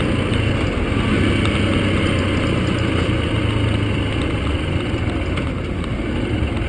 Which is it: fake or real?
real